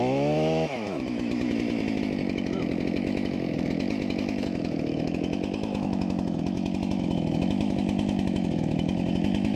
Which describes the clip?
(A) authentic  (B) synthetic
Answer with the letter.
B